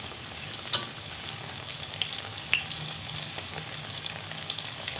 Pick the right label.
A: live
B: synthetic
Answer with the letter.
B